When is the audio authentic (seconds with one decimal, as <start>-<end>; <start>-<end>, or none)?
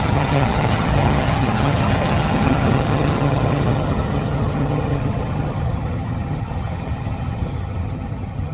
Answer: none